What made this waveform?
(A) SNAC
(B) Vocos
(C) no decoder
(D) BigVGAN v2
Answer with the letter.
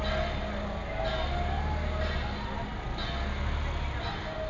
C